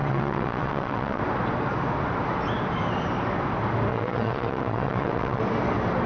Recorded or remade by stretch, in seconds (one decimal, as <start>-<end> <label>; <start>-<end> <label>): 0.0-1.2 remade; 1.2-3.9 recorded; 3.9-5.4 remade; 5.4-6.1 recorded